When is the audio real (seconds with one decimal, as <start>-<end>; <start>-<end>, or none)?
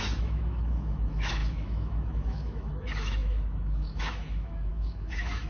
none